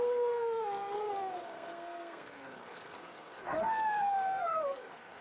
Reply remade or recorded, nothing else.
remade